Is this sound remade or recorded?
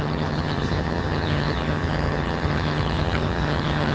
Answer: remade